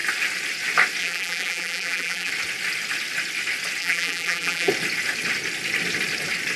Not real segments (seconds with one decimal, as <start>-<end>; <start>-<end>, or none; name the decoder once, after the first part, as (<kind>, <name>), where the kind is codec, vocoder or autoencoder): 1.0-2.3 (vocoder, BigVGAN v2); 3.8-4.7